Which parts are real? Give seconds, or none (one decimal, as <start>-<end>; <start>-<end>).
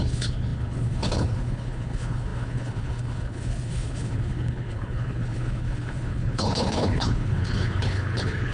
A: none